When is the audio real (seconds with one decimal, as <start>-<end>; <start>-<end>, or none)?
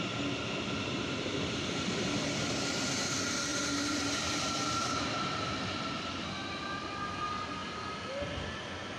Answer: 0.0-3.5; 6.3-9.0